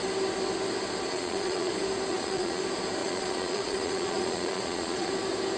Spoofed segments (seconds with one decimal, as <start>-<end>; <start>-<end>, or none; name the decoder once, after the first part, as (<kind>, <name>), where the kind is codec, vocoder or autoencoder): 1.1-1.7 (vocoder, Vocos); 2.1-2.6; 3.0-5.1